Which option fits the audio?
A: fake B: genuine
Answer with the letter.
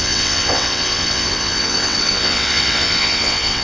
A